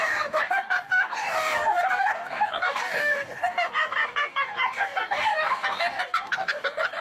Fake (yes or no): yes